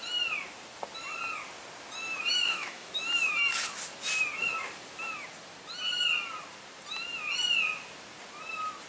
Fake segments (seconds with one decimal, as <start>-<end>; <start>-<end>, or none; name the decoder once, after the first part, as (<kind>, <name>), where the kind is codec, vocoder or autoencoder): 2.3-2.9 (autoencoder, DAC-VAE)